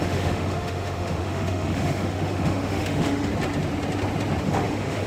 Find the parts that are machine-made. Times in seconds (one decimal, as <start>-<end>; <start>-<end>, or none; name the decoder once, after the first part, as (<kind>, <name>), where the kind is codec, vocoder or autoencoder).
0.0-3.3 (autoencoder, DAC-VAE); 4.4-5.1